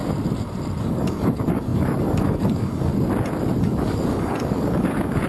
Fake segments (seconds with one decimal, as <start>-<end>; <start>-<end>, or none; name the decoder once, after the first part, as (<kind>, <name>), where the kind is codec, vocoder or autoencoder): 0.8-2.9 (codec, DAC); 3.6-5.3